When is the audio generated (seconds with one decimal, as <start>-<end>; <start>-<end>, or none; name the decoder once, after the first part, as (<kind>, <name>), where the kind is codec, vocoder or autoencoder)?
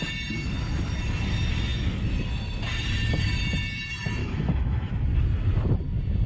4.2-4.9 (autoencoder, DAC-VAE)